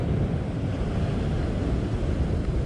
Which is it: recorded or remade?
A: remade